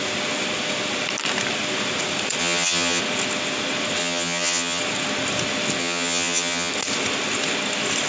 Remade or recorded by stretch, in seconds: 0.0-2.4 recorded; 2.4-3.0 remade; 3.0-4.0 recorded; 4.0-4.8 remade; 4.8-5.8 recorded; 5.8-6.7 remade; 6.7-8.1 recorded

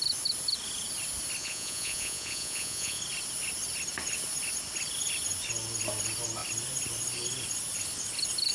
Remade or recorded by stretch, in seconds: 0.0-1.4 recorded; 1.4-3.0 remade; 3.0-8.5 recorded